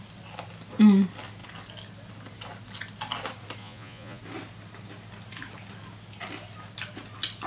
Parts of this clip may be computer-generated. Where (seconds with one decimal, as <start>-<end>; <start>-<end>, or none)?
3.6-4.2